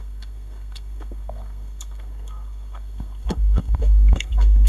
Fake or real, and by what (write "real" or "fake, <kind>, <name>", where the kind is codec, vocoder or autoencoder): fake, codec, SNAC